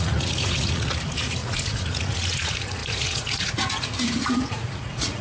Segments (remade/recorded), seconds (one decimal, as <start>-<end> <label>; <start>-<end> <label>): 0.0-5.2 remade